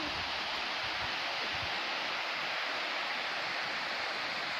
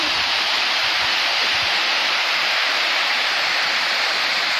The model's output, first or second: second